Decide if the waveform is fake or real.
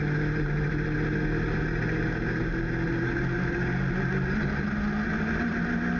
real